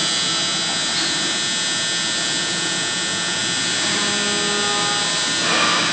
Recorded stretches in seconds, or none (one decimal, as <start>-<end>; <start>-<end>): 0.0-2.4; 3.4-5.9